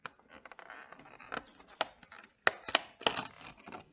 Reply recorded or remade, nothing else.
recorded